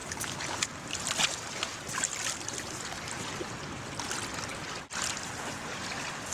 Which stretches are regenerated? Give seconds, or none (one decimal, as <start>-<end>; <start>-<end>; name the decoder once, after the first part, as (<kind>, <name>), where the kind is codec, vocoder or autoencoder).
none